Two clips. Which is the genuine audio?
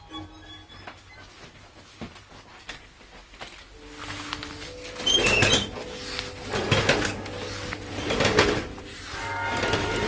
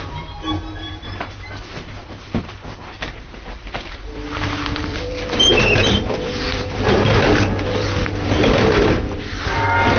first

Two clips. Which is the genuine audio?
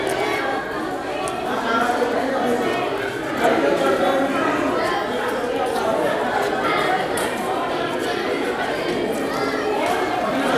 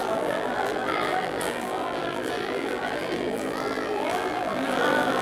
first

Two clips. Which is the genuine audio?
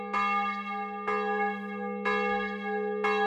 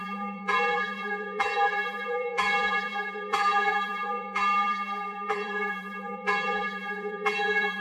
first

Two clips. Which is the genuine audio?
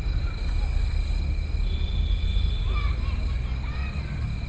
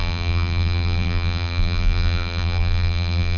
first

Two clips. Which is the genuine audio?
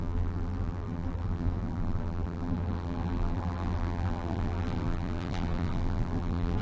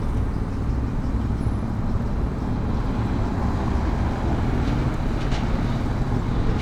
second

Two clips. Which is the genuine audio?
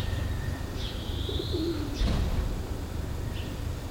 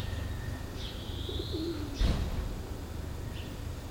second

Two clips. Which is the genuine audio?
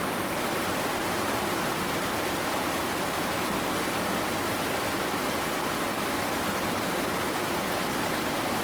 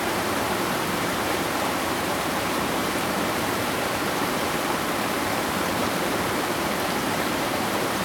first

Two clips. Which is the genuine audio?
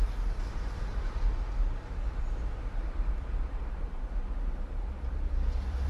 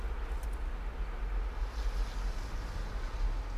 second